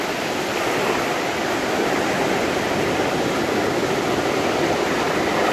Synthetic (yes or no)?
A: no